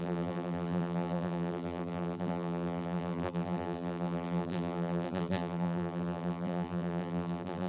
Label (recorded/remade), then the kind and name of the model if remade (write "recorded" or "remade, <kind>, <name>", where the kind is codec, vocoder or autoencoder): remade, vocoder, BigVGAN v2